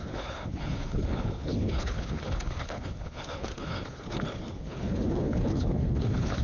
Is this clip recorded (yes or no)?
no